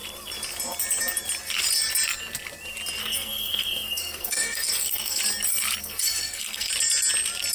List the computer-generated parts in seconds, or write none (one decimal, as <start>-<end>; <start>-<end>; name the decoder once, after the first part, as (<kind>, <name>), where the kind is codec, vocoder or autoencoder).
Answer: 3.0-5.2 (codec, SNAC); 5.8-6.7